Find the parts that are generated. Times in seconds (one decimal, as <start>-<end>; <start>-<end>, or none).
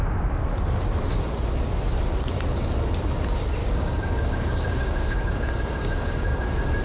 3.6-6.8